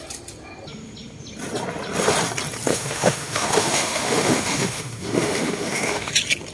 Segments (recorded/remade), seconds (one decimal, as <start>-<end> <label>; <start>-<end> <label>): 0.0-2.7 recorded; 2.7-6.1 remade; 6.1-6.5 recorded